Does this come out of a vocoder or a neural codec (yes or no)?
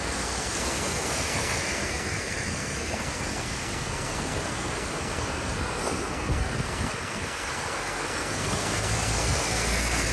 yes